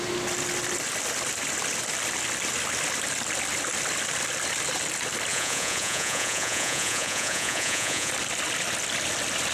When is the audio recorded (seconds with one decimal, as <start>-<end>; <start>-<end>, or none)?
0.0-5.3; 8.1-9.5

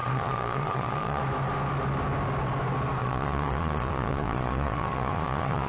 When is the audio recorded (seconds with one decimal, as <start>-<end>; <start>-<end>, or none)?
1.2-3.0

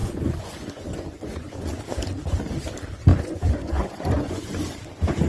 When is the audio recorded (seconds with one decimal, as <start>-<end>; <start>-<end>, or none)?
1.8-3.1; 4.6-5.3

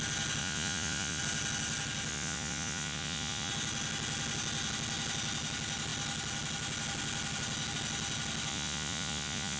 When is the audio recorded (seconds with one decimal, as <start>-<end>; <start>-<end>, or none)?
0.0-0.4; 1.2-2.1; 3.5-8.5